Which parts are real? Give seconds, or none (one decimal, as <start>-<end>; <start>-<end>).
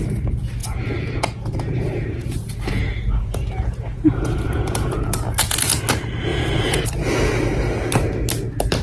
0.0-0.6; 5.8-6.3; 6.8-8.8